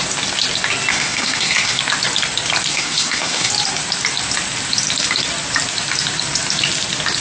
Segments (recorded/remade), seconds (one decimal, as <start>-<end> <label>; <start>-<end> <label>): 0.0-0.9 recorded; 0.9-1.8 remade; 1.8-2.7 recorded; 2.7-3.5 remade; 3.5-7.2 recorded

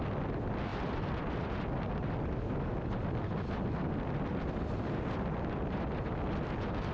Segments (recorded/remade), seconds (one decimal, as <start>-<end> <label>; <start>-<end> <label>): 0.0-6.9 recorded

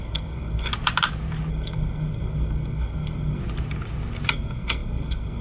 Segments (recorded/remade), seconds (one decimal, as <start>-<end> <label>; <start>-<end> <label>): 0.0-0.7 remade; 0.7-1.5 recorded; 1.5-3.4 remade; 3.4-4.3 recorded; 4.3-5.4 remade

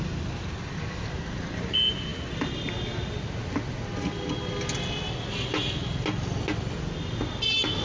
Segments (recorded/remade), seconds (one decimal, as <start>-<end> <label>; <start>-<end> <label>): 0.0-7.8 recorded

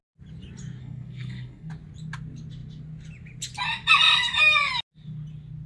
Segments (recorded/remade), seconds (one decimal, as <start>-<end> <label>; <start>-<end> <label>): 0.0-0.8 recorded; 0.8-1.7 remade; 1.7-5.7 recorded

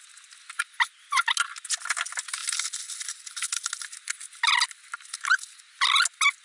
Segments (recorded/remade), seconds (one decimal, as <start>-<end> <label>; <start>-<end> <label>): 0.0-6.4 recorded

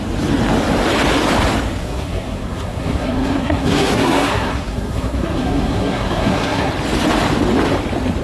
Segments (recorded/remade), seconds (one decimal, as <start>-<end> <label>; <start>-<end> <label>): 0.0-1.8 recorded; 1.8-6.7 remade; 6.7-8.2 recorded

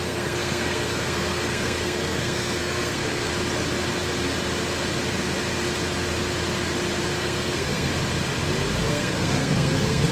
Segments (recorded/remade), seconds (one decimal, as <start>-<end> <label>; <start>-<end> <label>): 0.0-3.3 remade; 3.3-7.2 recorded; 7.2-7.9 remade; 7.9-8.9 recorded; 8.9-10.1 remade